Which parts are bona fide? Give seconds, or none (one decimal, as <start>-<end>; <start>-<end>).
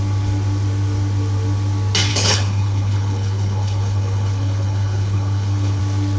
0.0-2.1; 5.8-6.2